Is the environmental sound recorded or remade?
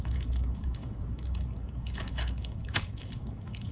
remade